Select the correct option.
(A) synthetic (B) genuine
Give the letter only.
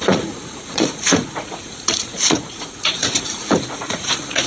A